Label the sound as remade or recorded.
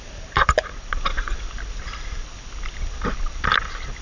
remade